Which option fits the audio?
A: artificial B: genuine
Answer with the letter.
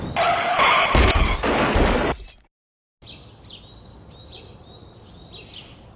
B